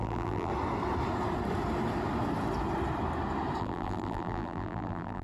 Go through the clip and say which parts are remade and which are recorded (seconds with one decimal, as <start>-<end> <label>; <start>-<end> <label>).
0.0-0.5 remade; 0.5-3.6 recorded; 3.6-5.2 remade